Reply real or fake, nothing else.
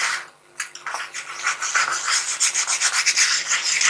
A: real